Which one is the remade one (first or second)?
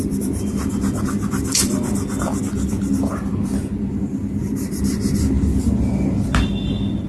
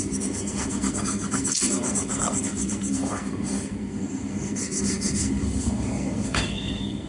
second